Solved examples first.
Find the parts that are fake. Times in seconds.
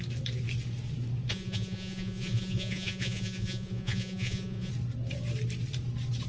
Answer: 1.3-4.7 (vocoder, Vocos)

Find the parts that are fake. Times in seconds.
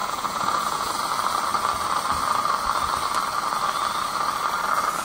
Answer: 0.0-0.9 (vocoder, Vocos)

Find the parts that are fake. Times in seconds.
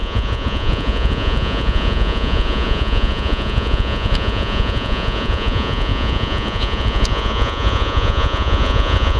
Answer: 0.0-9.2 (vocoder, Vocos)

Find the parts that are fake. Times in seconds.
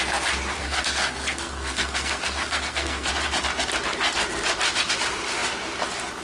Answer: 0.6-3.1 (codec, SNAC)